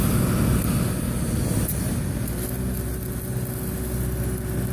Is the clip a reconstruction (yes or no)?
no